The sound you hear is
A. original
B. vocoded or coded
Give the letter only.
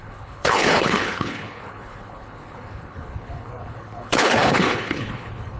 B